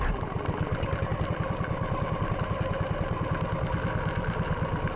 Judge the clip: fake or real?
real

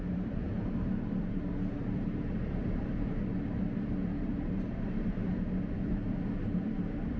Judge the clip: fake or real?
fake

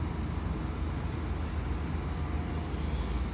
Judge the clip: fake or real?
real